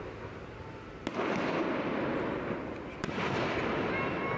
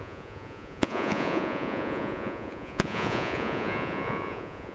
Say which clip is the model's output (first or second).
second